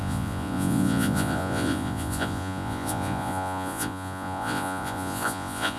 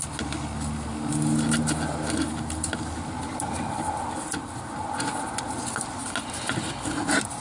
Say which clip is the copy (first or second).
first